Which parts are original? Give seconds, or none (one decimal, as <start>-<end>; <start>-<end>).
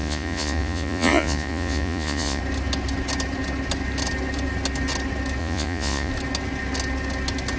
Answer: 2.4-5.4; 6.1-7.6